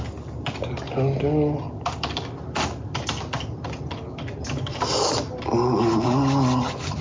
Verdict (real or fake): real